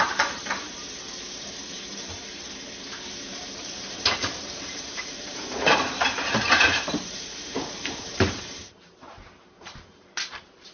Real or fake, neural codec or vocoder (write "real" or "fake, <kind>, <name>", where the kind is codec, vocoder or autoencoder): fake, vocoder, BigVGAN v2